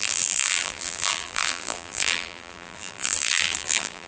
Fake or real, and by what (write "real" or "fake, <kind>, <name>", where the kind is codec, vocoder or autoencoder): fake, vocoder, BigVGAN v2